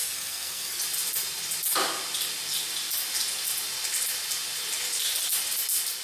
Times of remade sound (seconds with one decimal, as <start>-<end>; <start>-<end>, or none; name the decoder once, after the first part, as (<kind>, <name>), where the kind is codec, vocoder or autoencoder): 0.0-0.8 (codec, SNAC)